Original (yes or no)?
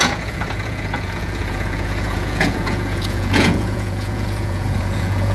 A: no